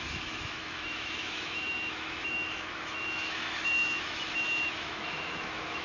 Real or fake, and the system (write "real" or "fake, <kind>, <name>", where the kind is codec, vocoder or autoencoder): fake, autoencoder, DAC-VAE